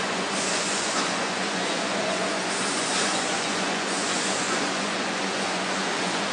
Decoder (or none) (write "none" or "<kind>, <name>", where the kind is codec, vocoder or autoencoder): vocoder, Vocos